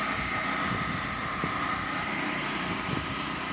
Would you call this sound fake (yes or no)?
no